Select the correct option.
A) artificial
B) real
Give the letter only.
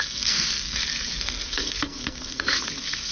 A